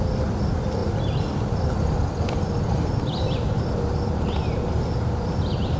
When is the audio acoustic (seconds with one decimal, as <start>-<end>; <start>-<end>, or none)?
0.0-5.8